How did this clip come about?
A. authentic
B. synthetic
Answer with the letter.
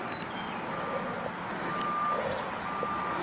A